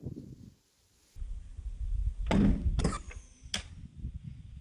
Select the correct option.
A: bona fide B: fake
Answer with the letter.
A